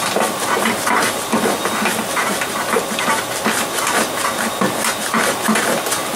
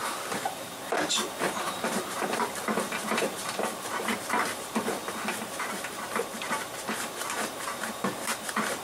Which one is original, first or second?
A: first